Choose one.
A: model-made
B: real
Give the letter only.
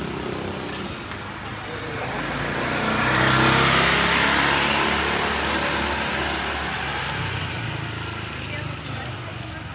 B